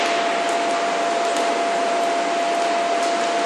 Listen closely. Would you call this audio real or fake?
real